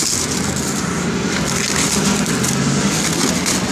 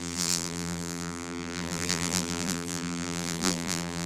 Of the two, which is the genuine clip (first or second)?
first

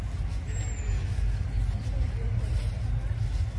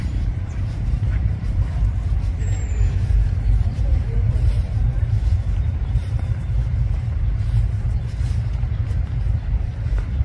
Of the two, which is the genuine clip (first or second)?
first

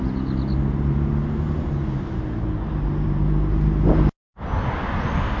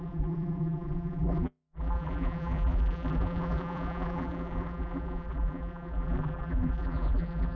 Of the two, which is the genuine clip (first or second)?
first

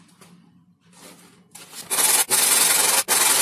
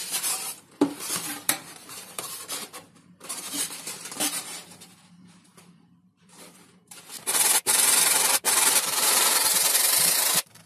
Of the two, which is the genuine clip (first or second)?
first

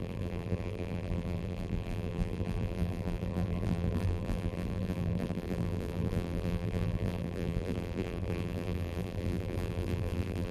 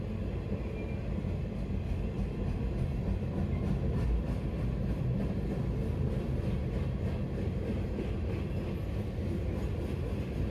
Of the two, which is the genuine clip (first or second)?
second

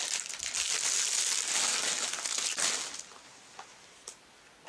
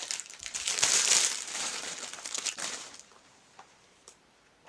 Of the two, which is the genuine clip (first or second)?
first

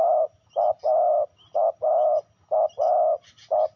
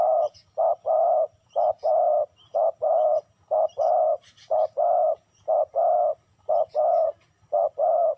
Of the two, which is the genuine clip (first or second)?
first